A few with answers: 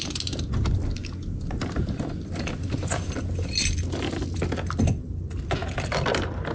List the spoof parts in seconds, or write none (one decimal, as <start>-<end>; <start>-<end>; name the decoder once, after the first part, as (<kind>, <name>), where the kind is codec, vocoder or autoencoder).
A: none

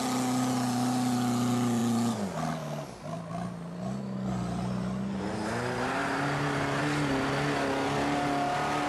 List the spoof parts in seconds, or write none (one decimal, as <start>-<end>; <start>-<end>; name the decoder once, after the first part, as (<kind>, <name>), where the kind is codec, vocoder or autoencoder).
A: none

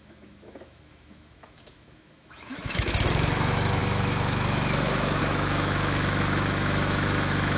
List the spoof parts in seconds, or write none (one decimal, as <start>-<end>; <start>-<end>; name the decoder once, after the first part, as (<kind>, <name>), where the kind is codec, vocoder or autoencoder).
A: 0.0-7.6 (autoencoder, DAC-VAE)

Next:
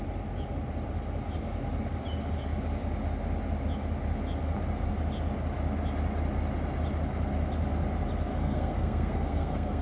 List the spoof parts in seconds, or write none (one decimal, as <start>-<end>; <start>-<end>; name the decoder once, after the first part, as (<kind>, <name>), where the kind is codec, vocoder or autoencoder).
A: 8.3-9.8 (codec, SNAC)